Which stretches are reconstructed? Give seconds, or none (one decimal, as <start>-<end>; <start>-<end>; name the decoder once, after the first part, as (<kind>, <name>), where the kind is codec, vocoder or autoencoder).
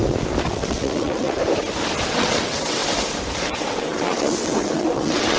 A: 0.5-1.4 (vocoder, WaveNeXt); 2.1-2.8; 3.4-5.4